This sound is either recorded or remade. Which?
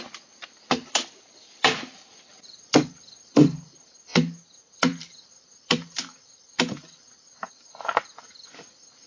remade